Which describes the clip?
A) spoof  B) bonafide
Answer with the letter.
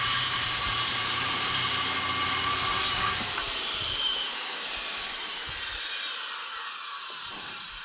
A